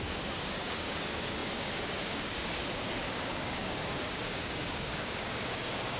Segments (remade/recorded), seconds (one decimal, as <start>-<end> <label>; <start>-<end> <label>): 0.0-6.0 remade